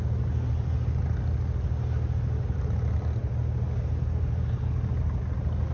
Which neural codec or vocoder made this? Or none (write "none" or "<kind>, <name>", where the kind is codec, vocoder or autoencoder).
none